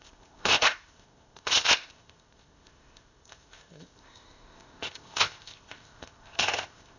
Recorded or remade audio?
remade